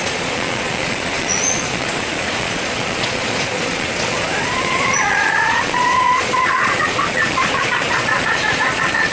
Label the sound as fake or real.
fake